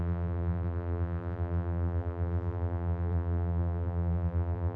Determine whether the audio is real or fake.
fake